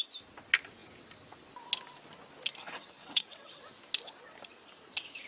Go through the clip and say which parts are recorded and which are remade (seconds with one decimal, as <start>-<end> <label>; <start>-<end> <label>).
0.0-2.6 recorded; 2.6-3.6 remade; 3.6-5.3 recorded